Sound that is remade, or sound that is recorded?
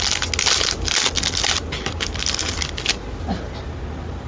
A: recorded